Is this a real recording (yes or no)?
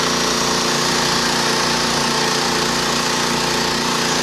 yes